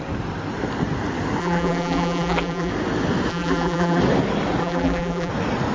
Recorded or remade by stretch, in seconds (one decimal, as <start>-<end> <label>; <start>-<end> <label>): 0.0-1.4 recorded; 1.4-2.7 remade; 2.7-3.3 recorded; 3.3-4.0 remade; 4.0-4.6 recorded; 4.6-5.3 remade; 5.3-5.7 recorded